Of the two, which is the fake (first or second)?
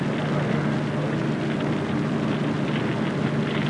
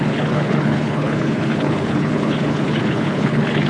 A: second